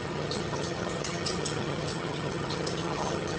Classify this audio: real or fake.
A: fake